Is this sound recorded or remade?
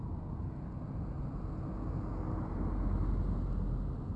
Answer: recorded